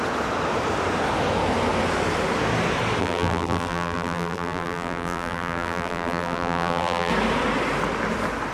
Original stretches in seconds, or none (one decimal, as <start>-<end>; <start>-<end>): 0.0-3.0; 7.1-8.5